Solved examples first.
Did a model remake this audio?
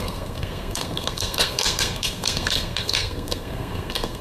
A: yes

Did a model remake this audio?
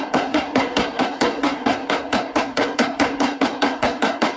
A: yes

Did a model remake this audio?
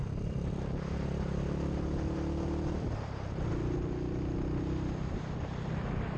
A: no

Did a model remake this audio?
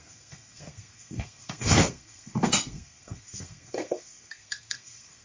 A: yes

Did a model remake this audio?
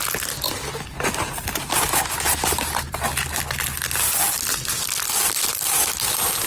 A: no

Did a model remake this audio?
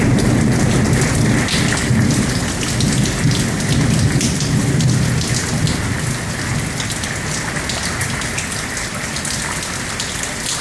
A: no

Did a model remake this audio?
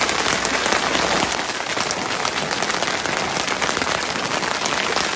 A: no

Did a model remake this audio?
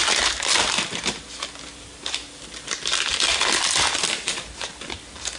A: no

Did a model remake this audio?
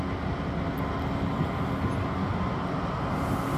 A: no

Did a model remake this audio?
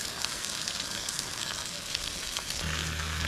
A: yes